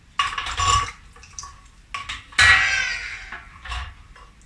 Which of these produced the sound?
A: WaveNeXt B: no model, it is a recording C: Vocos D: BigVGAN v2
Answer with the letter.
B